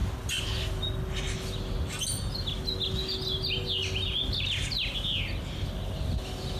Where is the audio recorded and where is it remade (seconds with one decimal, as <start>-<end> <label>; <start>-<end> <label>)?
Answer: 0.0-6.6 recorded